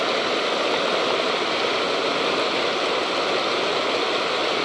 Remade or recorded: recorded